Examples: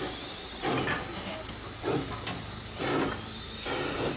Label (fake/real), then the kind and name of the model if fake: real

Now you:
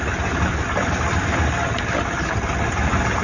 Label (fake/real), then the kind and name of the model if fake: real